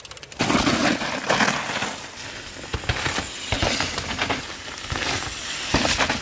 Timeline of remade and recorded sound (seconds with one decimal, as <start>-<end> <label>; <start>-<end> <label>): 0.0-6.2 recorded